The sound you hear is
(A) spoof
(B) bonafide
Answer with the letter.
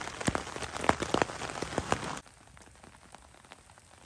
B